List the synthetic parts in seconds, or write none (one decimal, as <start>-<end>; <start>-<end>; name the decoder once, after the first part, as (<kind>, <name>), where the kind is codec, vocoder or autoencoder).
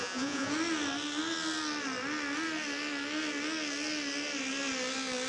0.0-0.5 (vocoder, Vocos)